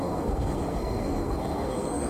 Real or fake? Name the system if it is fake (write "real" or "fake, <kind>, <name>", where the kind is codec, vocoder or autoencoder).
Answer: fake, codec, SNAC